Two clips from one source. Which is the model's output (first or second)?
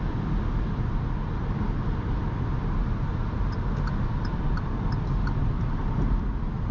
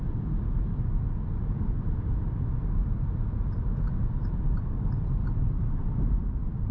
second